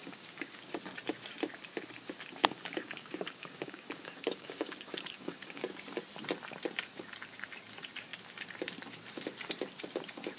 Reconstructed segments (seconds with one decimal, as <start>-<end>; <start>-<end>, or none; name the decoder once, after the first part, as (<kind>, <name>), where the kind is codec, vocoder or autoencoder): 0.0-0.7 (codec, DAC); 2.4-5.6